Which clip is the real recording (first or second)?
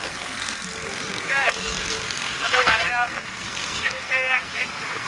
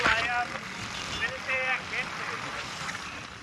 second